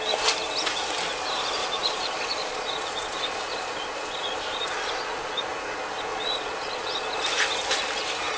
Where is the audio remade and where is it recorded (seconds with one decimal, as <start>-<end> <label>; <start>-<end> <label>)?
0.0-1.6 recorded; 1.6-5.5 remade; 5.5-6.1 recorded; 6.1-7.2 remade; 7.2-8.4 recorded